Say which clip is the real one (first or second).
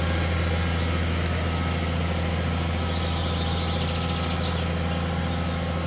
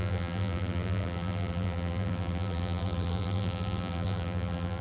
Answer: first